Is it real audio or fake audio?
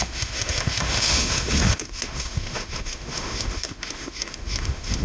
fake